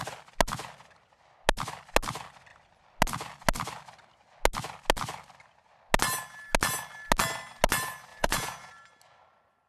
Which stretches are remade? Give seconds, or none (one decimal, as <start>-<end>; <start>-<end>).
8.1-8.7